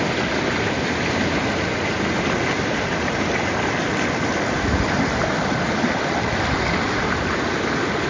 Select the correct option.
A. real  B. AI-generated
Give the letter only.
A